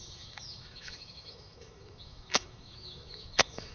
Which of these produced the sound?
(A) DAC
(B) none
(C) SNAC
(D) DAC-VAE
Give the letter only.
D